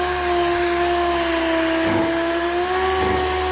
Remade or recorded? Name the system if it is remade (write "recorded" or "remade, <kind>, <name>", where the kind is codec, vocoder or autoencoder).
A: recorded